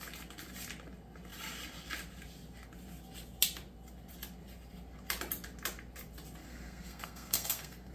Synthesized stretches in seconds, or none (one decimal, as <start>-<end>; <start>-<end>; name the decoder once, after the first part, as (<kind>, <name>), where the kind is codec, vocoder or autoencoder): 6.4-7.9 (codec, SNAC)